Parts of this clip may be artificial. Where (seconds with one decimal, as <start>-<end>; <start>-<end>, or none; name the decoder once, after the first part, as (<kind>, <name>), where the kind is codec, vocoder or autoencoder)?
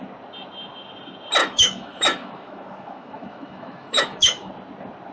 1.4-4.5 (autoencoder, DAC-VAE)